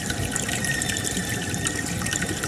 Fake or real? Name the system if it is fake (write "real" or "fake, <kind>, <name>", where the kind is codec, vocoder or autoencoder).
fake, vocoder, BigVGAN v2